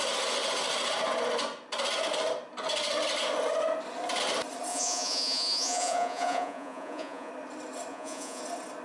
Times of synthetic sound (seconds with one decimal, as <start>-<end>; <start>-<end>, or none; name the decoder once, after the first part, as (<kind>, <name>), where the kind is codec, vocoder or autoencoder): 4.7-7.3 (vocoder, Vocos); 7.9-8.4